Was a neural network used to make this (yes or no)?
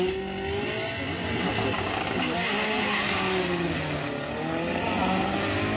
no